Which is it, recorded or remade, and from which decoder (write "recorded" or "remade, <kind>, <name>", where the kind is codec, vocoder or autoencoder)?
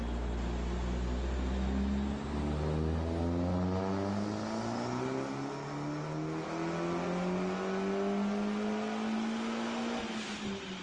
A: recorded